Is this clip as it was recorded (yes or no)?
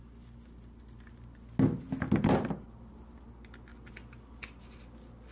yes